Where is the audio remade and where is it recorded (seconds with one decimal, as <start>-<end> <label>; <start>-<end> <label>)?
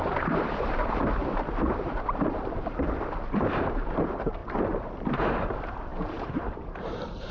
0.0-1.2 remade; 1.2-2.3 recorded; 2.3-4.4 remade; 4.4-5.1 recorded; 5.1-7.3 remade